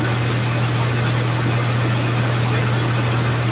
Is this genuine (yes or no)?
yes